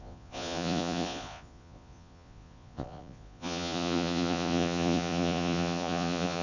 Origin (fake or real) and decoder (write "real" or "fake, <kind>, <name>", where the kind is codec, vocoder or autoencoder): fake, vocoder, Vocos